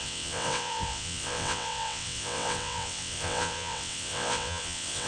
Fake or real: fake